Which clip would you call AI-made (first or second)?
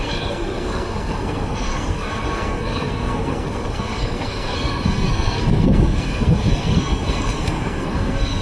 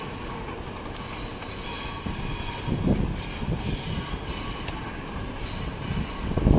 first